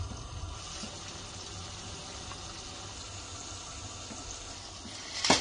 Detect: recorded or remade recorded